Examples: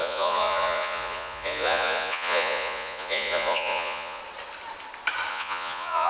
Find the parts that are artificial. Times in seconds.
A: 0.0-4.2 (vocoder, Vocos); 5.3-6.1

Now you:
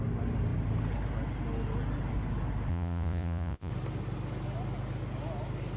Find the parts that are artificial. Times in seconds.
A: 2.7-3.7 (vocoder, Vocos)

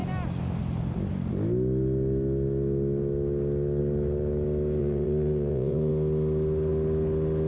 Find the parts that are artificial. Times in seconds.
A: 4.8-5.9 (vocoder, Vocos)

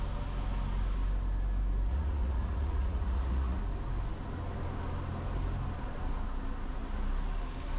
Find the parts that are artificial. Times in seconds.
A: 1.9-3.6 (vocoder, Vocos)

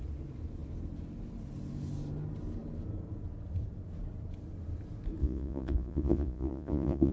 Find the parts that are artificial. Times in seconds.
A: 5.2-7.1 (vocoder, Vocos)